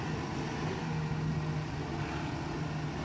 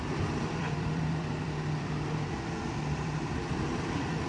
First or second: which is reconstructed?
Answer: second